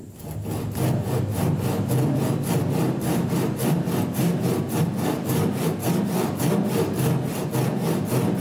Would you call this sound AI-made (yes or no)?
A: no